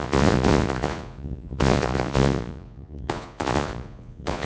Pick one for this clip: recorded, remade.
remade